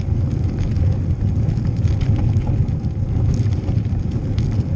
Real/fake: real